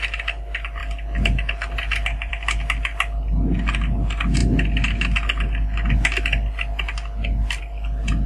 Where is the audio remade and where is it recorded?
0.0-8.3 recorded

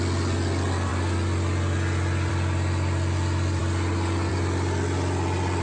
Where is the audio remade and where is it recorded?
0.0-5.6 recorded